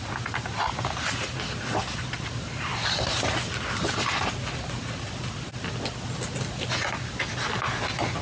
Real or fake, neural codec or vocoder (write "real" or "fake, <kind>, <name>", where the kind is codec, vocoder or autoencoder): real